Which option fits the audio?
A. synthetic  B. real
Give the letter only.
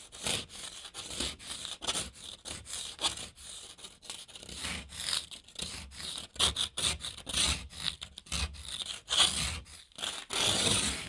B